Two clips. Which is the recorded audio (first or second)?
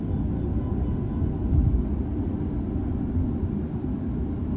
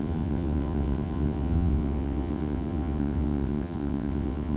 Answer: first